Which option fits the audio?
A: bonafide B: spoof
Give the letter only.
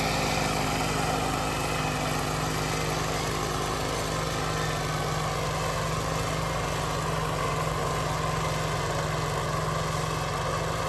A